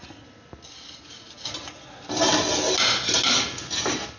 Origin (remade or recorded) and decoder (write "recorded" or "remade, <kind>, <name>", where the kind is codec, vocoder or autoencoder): recorded